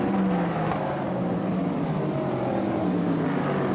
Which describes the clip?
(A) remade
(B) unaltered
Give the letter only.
B